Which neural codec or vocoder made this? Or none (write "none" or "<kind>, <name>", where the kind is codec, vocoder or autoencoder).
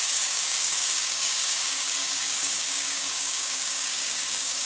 codec, DAC